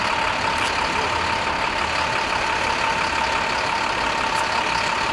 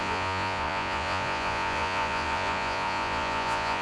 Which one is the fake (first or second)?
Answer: second